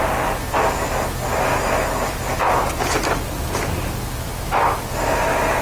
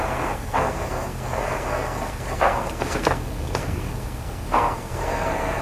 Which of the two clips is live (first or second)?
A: first